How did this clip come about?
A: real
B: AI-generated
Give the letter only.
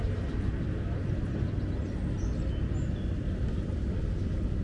A